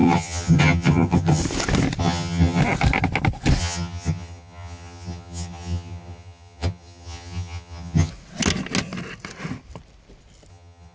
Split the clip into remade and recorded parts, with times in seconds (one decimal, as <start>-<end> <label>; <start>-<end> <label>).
0.0-1.4 remade; 1.4-2.0 recorded; 2.0-2.6 remade; 2.6-3.6 recorded; 3.6-8.1 remade; 8.1-10.5 recorded; 10.5-10.9 remade